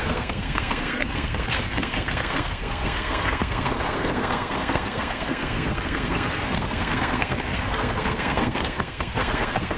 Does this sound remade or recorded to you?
remade